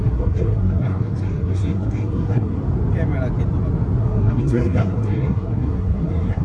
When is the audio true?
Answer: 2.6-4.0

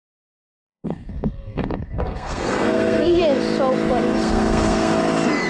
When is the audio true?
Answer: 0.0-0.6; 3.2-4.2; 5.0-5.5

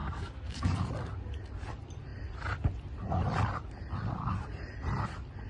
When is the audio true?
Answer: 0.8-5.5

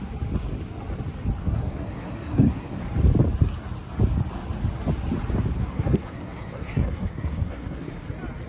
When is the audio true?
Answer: 0.0-1.4; 2.8-5.6; 8.1-8.5